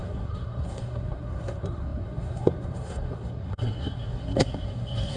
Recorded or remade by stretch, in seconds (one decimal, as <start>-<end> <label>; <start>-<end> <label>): 0.0-5.2 remade